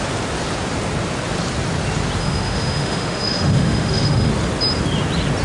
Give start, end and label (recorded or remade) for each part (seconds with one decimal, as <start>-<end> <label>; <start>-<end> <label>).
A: 0.0-2.2 recorded; 2.2-4.3 remade; 4.3-5.4 recorded